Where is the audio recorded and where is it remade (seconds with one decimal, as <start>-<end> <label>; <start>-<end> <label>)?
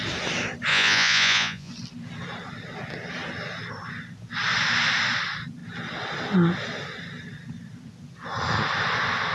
0.0-0.7 recorded; 0.7-1.7 remade; 1.7-9.3 recorded